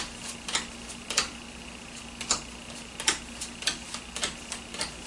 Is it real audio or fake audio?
real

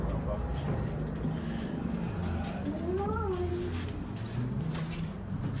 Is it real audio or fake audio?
real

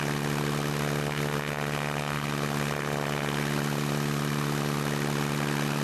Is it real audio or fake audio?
real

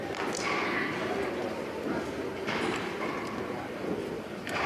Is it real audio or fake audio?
real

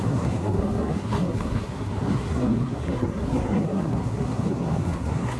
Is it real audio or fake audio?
fake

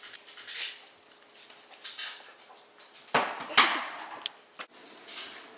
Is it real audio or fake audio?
real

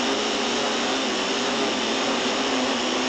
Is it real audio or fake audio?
real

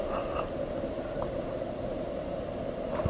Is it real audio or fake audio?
real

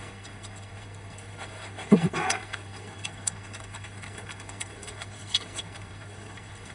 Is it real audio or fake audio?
fake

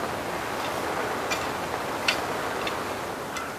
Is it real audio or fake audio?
real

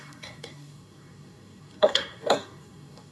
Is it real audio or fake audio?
fake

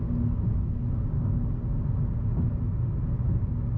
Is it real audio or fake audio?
real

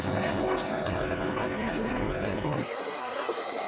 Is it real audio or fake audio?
fake